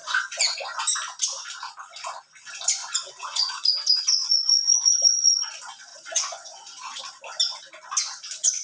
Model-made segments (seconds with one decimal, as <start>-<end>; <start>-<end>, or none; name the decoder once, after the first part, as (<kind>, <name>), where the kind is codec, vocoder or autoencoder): 0.0-0.8 (vocoder, Vocos); 2.8-3.5; 4.2-5.5; 5.9-7.0